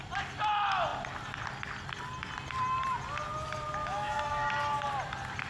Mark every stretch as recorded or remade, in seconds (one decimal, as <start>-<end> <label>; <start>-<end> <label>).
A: 0.0-3.8 recorded; 3.8-4.5 remade; 4.5-5.5 recorded